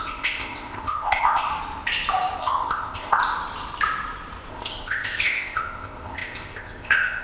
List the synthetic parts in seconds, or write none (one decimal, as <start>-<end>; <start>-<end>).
0.0-1.5; 2.4-3.2; 4.5-7.2